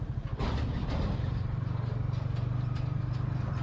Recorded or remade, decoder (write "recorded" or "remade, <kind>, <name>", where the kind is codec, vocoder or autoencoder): recorded